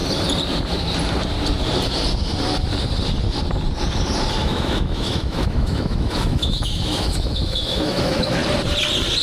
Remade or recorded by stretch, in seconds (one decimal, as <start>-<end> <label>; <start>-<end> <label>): 0.0-4.4 recorded; 4.4-8.4 remade; 8.4-9.2 recorded